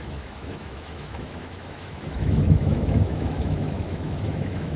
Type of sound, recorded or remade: remade